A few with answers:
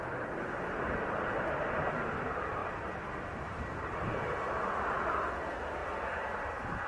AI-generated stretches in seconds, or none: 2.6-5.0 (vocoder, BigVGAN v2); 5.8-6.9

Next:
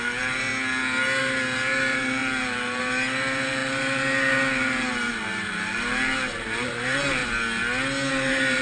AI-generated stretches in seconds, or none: 0.0-0.5 (vocoder, BigVGAN v2); 1.2-7.2; 8.1-8.6

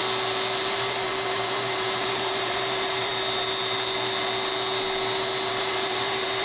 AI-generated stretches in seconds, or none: 0.7-3.1 (vocoder, BigVGAN v2); 5.5-6.4